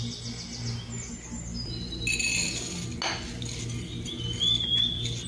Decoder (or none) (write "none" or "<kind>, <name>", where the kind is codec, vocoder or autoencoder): none